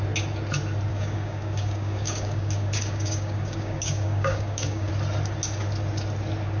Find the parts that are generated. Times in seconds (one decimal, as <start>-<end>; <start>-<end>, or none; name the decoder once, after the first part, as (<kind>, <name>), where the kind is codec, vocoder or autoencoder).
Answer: 0.9-4.9 (codec, DAC)